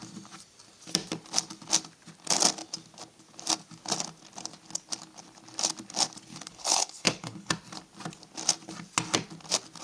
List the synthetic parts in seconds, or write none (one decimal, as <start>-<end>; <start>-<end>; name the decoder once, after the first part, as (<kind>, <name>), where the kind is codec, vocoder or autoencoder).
6.3-7.5 (codec, HILCodec)